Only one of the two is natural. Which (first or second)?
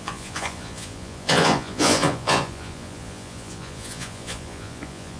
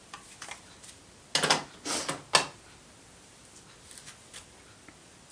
second